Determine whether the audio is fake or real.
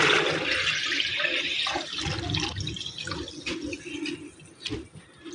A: real